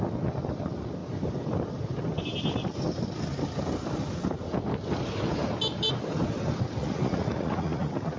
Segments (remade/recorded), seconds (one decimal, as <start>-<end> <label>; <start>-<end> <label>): 0.0-6.8 recorded; 6.8-8.2 remade